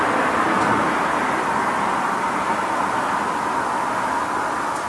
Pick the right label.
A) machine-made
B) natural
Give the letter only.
B